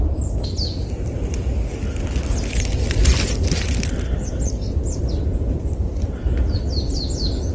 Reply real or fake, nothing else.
real